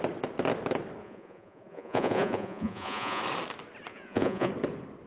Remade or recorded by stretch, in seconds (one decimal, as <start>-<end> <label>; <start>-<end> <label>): 0.0-1.0 recorded; 1.0-3.2 remade; 3.2-3.9 recorded; 3.9-4.5 remade; 4.5-5.1 recorded